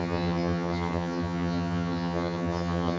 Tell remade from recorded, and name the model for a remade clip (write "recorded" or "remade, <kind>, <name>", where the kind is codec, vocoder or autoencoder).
remade, vocoder, HiFi-GAN